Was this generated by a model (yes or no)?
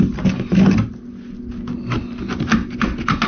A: no